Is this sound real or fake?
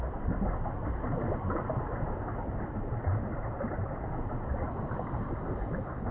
real